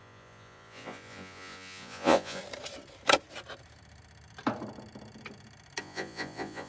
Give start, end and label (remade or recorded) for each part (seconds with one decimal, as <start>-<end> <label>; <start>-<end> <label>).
0.0-2.4 remade; 2.4-5.8 recorded; 5.8-6.7 remade